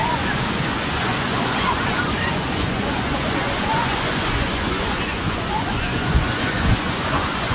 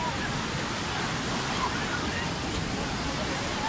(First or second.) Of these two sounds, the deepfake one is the first